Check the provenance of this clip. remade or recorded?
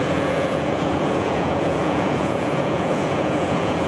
remade